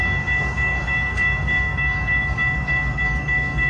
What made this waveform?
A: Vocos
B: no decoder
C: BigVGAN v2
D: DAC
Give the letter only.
D